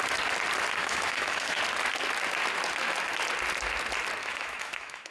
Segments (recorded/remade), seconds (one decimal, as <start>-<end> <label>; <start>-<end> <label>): 0.0-0.8 recorded; 0.8-1.6 remade; 1.6-4.2 recorded; 4.2-5.1 remade